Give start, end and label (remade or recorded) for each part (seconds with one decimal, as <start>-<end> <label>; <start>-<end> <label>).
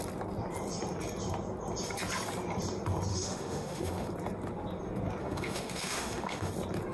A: 0.0-3.1 recorded; 3.1-4.1 remade; 4.1-5.2 recorded; 5.2-6.5 remade; 6.5-6.9 recorded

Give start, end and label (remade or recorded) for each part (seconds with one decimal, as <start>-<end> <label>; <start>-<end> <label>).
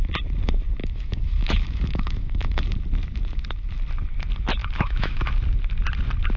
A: 0.0-0.8 recorded; 0.8-2.6 remade; 2.6-4.6 recorded; 4.6-5.3 remade; 5.3-6.4 recorded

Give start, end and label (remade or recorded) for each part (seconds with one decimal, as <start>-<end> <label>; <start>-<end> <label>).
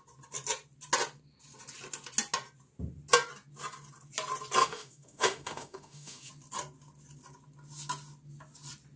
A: 0.0-4.6 recorded; 4.6-6.3 remade; 6.3-9.0 recorded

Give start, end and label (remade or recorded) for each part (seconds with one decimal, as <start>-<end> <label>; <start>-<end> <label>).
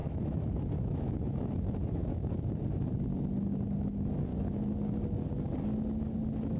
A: 0.0-2.5 remade; 2.5-4.3 recorded; 4.3-4.9 remade; 4.9-6.6 recorded